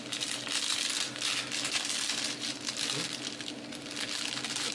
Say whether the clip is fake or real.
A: real